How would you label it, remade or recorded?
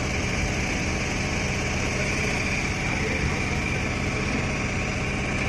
recorded